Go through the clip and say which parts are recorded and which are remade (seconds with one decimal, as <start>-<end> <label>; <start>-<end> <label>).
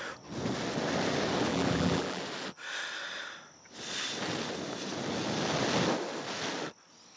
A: 0.0-1.5 recorded; 1.5-2.2 remade; 2.2-7.2 recorded